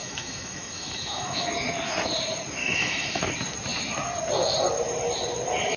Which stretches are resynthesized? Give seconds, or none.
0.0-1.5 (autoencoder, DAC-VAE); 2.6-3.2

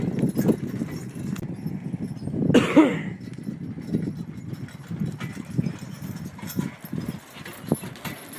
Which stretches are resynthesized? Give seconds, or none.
none

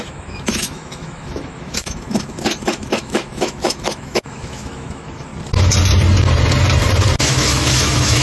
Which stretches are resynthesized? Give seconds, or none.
0.0-5.3 (autoencoder, DAC-VAE); 7.2-8.2

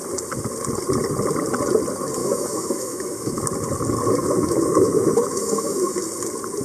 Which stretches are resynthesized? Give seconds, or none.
2.2-3.4 (autoencoder, DAC-VAE); 4.2-5.9